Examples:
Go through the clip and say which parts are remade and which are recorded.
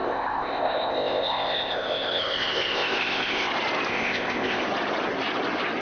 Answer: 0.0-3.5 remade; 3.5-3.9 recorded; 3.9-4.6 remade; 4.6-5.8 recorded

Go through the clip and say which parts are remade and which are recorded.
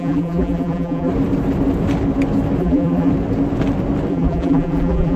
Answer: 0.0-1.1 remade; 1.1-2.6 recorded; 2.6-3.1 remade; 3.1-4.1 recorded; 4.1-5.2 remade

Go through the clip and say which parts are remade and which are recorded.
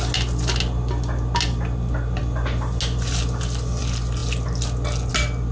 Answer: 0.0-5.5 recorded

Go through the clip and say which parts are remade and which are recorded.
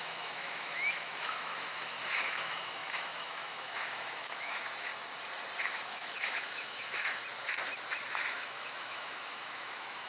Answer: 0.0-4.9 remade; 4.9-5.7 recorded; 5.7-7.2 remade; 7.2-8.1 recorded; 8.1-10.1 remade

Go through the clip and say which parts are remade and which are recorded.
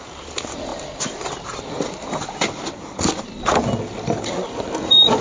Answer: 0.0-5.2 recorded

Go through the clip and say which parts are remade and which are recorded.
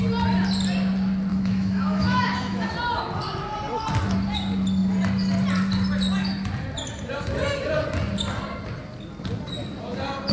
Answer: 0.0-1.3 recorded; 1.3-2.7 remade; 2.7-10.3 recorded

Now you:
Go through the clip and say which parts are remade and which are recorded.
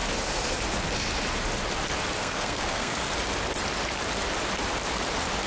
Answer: 0.0-2.2 recorded; 2.2-3.1 remade; 3.1-5.5 recorded